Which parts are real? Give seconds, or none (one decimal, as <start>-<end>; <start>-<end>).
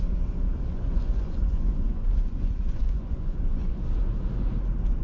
0.0-0.7; 3.7-5.0